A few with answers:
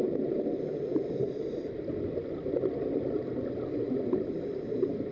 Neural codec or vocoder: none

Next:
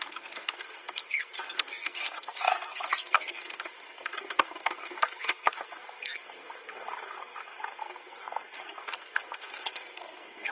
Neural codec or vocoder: codec, SNAC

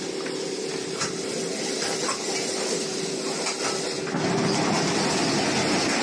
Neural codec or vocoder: none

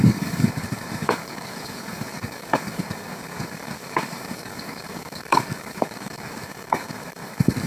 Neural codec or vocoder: codec, DAC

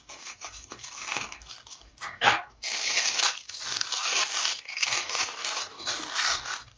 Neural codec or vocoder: codec, DAC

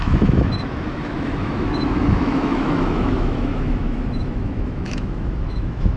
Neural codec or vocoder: autoencoder, DAC-VAE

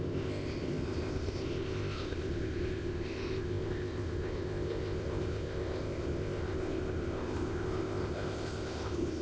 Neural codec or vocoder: codec, ZipCodec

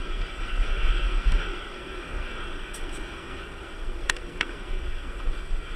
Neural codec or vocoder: codec, SNAC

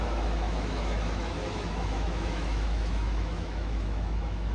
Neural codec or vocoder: autoencoder, DAC-VAE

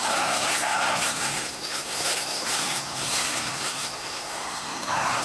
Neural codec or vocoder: codec, SNAC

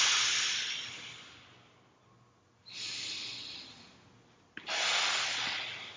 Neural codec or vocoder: none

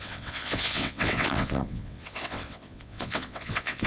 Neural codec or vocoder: vocoder, WaveNeXt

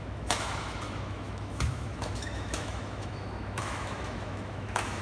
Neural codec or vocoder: autoencoder, DAC-VAE